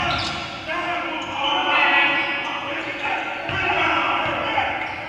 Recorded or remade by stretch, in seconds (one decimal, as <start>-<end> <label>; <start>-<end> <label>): 0.0-1.6 recorded; 1.6-3.0 remade; 3.0-5.1 recorded

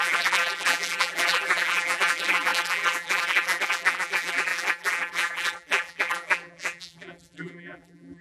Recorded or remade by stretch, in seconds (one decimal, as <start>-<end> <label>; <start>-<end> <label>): 0.0-8.2 remade